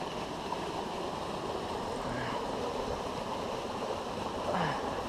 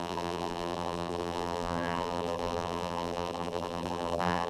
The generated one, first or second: second